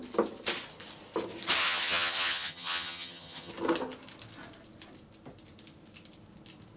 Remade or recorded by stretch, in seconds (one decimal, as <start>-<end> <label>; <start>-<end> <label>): 0.0-1.6 recorded; 1.6-3.5 remade; 3.5-6.8 recorded